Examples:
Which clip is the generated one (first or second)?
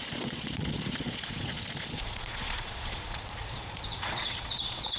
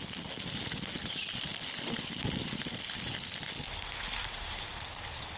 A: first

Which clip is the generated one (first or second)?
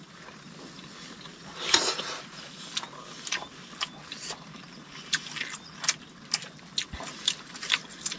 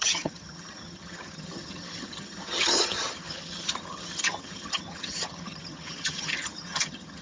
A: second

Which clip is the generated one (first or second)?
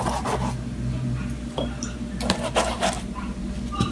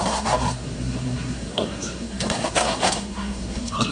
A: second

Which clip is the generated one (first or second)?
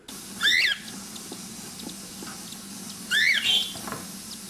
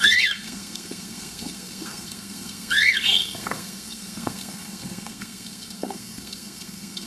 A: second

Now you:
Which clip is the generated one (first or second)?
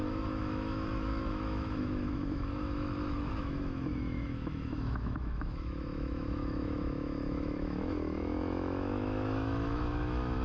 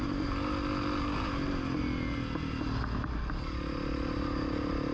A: first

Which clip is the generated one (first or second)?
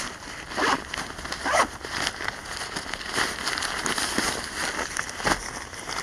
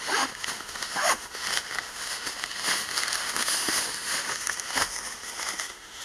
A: second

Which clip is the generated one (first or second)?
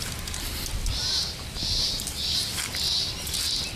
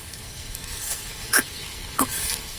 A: second